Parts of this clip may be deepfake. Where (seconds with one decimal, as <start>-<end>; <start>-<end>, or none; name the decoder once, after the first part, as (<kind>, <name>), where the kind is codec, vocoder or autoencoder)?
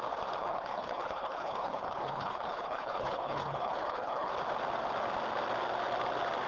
0.4-4.3 (codec, HILCodec)